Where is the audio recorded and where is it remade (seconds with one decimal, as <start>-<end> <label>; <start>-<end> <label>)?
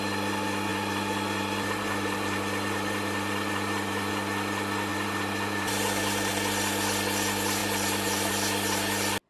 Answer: 0.0-0.7 recorded; 0.7-4.1 remade; 4.1-4.9 recorded; 4.9-6.3 remade; 6.3-7.6 recorded; 7.6-8.3 remade; 8.3-9.3 recorded